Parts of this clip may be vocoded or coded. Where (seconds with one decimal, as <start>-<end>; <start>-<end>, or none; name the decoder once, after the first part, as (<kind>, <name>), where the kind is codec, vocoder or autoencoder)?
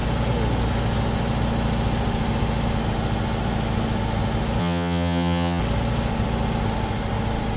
4.6-5.6 (vocoder, HiFi-GAN)